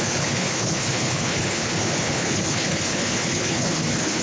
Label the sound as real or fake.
fake